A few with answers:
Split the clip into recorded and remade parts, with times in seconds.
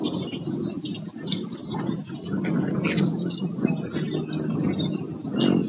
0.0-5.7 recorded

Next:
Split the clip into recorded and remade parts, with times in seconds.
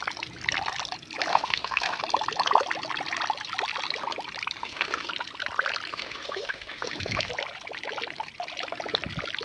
0.0-1.3 recorded; 1.3-2.0 remade; 2.0-4.6 recorded; 4.6-5.1 remade; 5.1-5.9 recorded; 5.9-7.3 remade; 7.3-9.4 recorded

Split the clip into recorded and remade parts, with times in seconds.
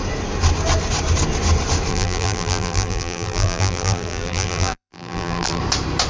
0.0-1.9 recorded; 1.9-5.6 remade; 5.6-6.1 recorded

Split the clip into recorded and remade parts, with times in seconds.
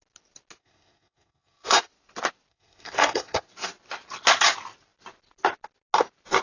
0.0-0.6 recorded; 0.6-1.8 remade; 1.8-2.5 recorded; 2.5-3.4 remade; 3.4-6.4 recorded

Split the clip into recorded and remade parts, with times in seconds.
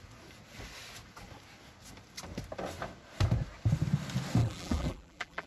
0.0-4.4 recorded; 4.4-5.5 remade